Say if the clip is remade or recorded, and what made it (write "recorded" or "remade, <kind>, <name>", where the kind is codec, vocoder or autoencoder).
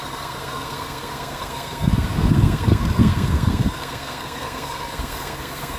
remade, codec, SNAC